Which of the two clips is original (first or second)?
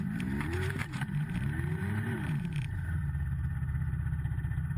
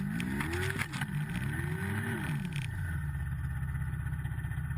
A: second